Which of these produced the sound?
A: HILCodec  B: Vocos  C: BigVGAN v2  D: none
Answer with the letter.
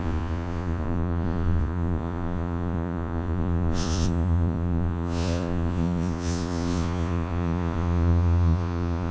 B